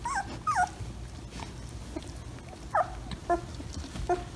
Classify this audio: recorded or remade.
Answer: recorded